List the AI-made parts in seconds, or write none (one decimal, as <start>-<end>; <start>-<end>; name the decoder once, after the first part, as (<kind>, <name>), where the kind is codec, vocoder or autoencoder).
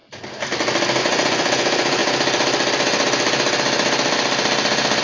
1.0-2.0 (vocoder, Vocos)